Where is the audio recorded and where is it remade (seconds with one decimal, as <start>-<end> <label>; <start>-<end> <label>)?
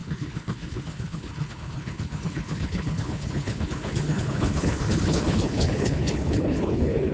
0.0-7.1 remade